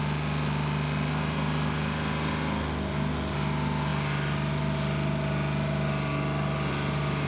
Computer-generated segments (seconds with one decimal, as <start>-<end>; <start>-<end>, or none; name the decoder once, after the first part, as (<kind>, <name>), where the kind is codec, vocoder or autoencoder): none